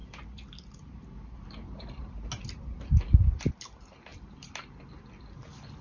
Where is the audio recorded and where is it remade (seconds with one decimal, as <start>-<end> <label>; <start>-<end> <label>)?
0.0-4.1 recorded; 4.1-4.9 remade; 4.9-5.8 recorded